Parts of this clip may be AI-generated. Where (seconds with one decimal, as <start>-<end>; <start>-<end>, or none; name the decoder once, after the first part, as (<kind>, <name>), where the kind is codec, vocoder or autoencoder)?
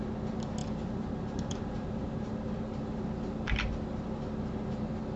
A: none